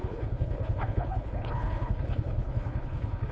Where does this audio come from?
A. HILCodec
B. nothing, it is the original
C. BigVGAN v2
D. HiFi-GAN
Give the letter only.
A